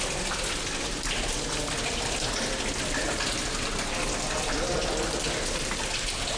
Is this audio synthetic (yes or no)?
no